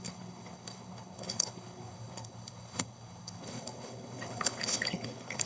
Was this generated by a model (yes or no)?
yes